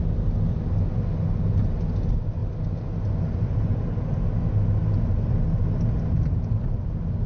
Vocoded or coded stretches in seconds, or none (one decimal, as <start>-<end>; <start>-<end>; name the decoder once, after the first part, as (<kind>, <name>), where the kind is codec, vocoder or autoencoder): none